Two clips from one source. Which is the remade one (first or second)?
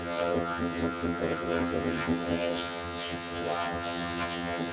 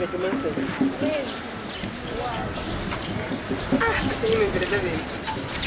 first